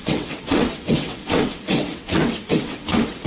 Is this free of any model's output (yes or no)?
no